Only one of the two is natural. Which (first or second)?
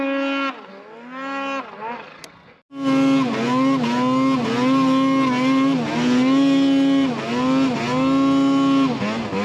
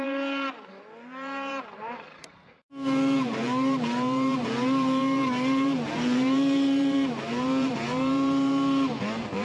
first